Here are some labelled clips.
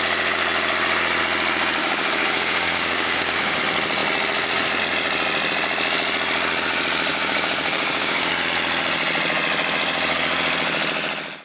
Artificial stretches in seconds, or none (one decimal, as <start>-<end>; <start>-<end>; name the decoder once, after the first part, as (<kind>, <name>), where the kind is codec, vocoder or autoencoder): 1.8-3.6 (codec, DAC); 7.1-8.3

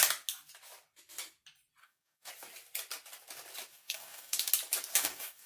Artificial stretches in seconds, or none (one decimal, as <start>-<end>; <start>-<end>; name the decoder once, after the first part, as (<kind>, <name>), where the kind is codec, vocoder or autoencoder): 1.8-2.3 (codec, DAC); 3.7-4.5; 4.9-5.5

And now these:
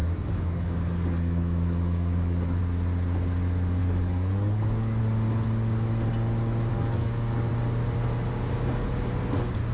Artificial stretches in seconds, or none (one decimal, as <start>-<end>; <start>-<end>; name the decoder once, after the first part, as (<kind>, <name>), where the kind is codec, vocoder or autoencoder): 0.0-2.6 (codec, DAC); 3.8-5.0; 6.7-7.5